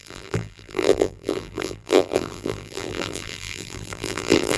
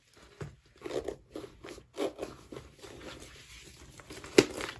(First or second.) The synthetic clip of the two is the first